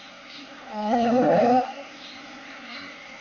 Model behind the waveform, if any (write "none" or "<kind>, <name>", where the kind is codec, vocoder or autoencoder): codec, SNAC